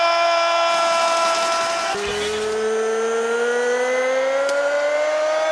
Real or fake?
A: real